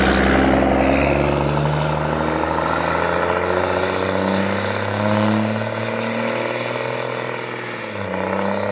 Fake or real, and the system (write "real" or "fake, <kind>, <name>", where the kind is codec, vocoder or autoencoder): real